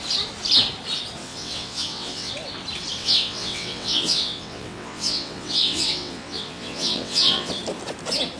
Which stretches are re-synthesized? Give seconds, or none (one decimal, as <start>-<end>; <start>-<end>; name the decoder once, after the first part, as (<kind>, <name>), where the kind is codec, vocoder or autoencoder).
1.2-2.3 (vocoder, WaveNeXt); 3.0-7.5